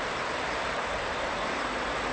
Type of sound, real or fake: fake